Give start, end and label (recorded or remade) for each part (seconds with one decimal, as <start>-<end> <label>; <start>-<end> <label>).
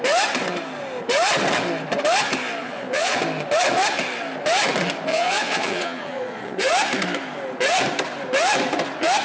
0.0-2.6 recorded; 2.6-3.2 remade; 3.2-5.1 recorded; 5.1-6.6 remade; 6.6-9.2 recorded